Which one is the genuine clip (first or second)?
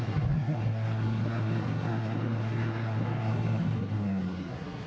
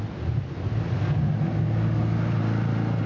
second